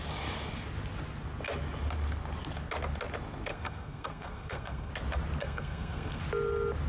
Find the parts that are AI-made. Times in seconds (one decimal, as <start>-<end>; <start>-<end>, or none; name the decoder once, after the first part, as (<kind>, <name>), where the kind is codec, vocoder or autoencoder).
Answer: 3.5-4.9 (codec, SNAC); 5.4-6.2